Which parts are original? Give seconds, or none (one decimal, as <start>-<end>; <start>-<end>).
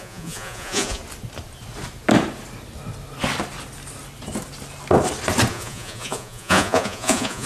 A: 1.0-5.5